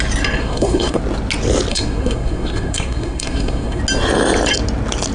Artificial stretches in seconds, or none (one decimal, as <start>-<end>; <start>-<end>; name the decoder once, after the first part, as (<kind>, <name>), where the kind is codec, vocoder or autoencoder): 0.4-1.0 (codec, SNAC); 1.7-3.8